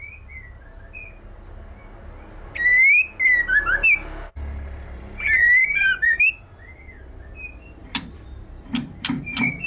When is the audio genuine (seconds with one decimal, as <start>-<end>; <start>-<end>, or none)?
0.0-5.6; 6.3-7.8